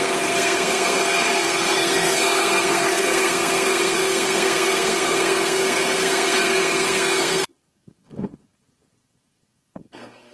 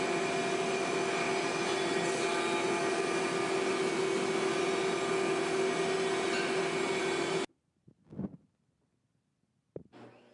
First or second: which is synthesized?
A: first